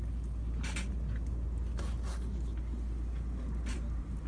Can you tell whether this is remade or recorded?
recorded